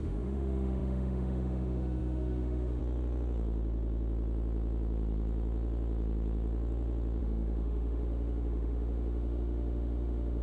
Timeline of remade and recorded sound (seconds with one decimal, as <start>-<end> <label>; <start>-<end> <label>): 0.0-2.8 remade; 2.8-7.2 recorded; 7.2-10.4 remade